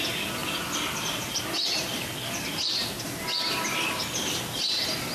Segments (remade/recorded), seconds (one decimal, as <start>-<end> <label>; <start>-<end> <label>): 0.0-5.1 recorded